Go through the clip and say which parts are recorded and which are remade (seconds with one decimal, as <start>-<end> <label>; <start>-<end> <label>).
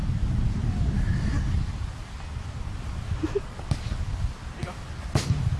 0.0-5.6 recorded